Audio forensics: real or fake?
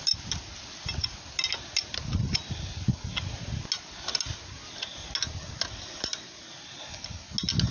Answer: real